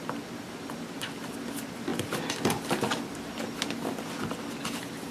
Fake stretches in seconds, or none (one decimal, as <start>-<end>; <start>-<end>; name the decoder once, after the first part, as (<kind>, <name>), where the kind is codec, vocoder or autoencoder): none